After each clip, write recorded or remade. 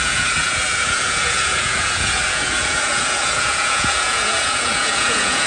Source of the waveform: remade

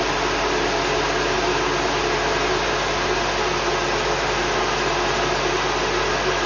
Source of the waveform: recorded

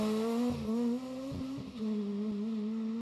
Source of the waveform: recorded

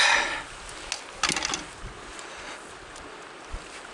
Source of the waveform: recorded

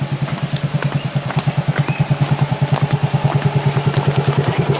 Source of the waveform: recorded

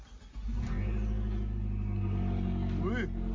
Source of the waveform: recorded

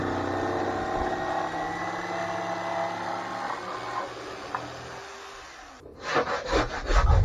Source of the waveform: recorded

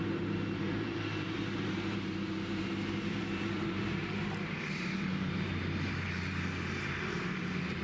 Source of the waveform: remade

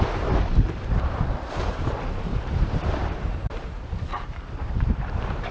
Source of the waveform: remade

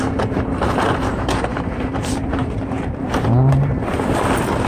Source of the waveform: remade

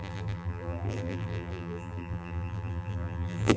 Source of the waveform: remade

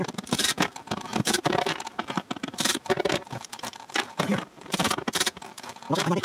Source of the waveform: remade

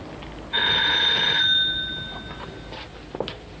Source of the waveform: recorded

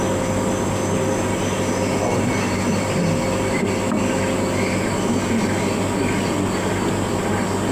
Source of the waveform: recorded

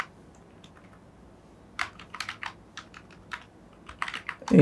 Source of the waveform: recorded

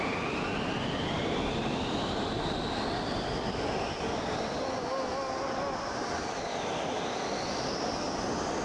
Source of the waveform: recorded